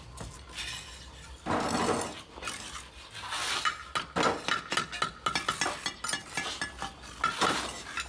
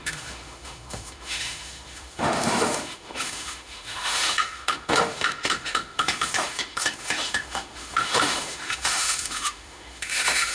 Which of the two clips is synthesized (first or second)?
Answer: second